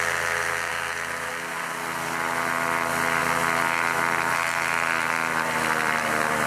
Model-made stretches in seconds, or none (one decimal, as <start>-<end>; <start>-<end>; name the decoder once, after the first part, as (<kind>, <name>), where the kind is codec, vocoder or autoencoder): 0.7-1.3 (vocoder, BigVGAN v2); 3.2-6.5